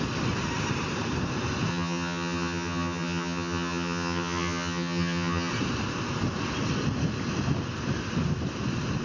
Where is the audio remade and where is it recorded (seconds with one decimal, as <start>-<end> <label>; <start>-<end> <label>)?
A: 0.0-1.7 recorded; 1.7-5.5 remade; 5.5-9.0 recorded